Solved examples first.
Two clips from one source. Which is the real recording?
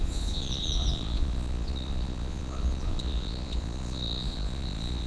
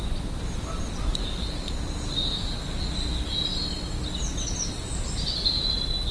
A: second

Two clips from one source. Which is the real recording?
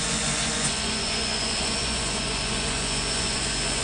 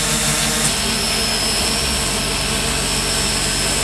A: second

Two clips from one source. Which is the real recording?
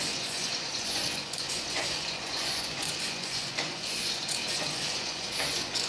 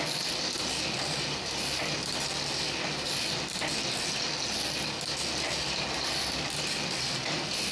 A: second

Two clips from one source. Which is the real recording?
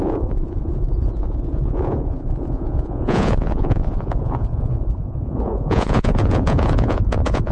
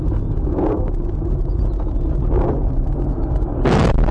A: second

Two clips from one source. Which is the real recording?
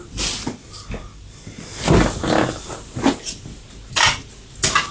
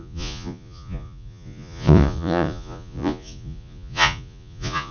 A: first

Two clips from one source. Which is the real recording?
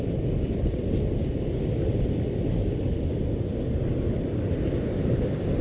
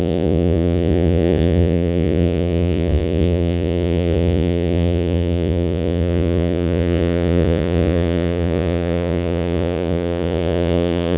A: first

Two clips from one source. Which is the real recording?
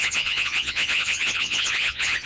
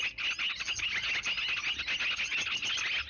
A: second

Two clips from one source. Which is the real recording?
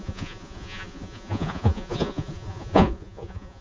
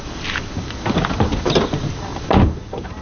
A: second